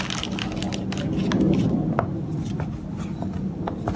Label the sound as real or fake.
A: real